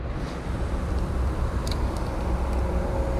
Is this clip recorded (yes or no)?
yes